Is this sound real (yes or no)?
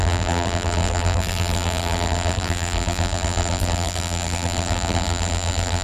no